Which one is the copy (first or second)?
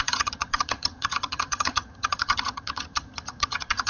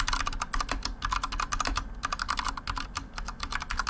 first